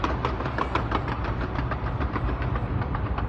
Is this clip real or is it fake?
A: fake